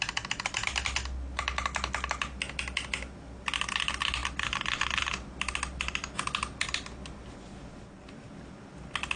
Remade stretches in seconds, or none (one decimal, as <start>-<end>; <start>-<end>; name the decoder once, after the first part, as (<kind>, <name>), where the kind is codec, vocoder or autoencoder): none